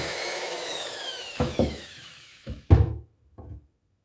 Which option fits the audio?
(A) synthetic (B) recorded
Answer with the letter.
A